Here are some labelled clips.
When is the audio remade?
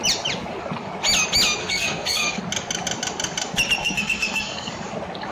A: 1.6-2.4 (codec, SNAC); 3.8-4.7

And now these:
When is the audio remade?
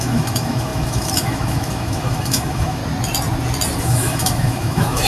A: 0.0-2.8 (autoencoder, DAC-VAE); 3.8-5.1